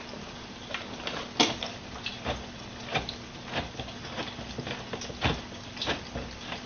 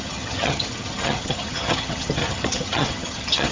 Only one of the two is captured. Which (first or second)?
first